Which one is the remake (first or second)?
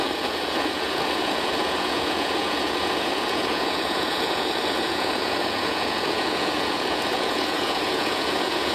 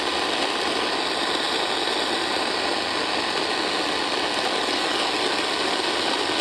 first